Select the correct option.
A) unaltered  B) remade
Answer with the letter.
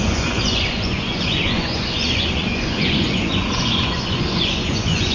B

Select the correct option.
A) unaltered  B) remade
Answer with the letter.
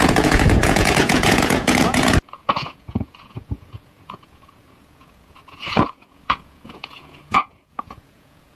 B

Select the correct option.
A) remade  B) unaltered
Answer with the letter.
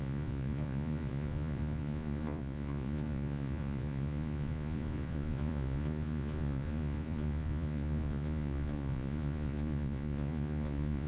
A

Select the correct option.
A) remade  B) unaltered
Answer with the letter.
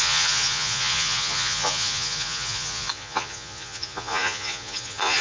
A